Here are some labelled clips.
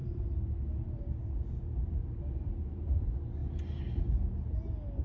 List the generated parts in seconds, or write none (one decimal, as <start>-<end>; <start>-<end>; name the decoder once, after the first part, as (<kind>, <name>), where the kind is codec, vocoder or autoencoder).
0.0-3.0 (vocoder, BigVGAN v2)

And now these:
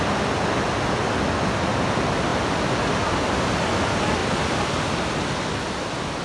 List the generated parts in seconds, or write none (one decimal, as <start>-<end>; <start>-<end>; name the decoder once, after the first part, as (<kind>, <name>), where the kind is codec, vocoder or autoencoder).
2.3-2.9 (vocoder, BigVGAN v2); 4.2-5.0

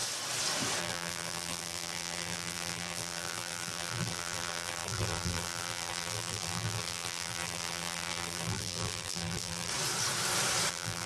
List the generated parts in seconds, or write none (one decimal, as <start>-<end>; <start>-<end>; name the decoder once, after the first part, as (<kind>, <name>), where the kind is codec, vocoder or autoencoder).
0.8-9.7 (vocoder, BigVGAN v2); 10.7-11.1

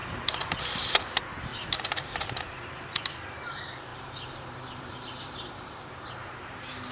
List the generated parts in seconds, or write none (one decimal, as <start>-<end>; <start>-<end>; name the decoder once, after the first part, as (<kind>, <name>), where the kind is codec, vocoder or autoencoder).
0.0-0.6 (vocoder, BigVGAN v2); 1.5-3.1; 3.9-6.9